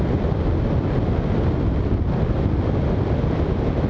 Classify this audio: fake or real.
real